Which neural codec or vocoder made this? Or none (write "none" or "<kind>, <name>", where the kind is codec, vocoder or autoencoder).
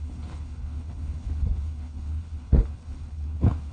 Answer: codec, HILCodec